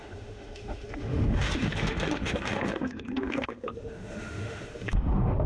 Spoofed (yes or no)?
yes